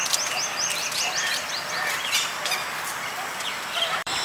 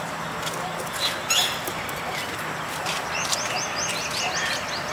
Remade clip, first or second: first